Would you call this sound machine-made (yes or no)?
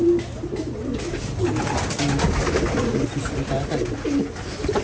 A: no